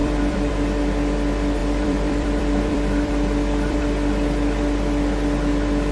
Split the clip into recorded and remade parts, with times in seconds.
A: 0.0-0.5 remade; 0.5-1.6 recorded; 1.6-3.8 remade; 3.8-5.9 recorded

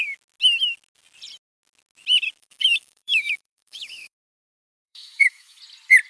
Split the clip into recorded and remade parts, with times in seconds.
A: 0.0-2.4 recorded; 2.4-5.6 remade; 5.6-6.1 recorded

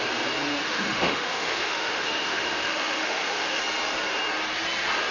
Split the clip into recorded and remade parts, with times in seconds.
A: 0.0-0.5 recorded; 0.5-3.6 remade; 3.6-5.1 recorded

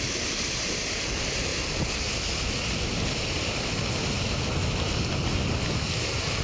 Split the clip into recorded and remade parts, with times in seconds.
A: 0.0-6.4 recorded